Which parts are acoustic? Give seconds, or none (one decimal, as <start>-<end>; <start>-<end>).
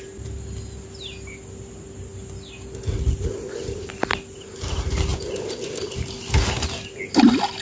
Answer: 0.0-7.6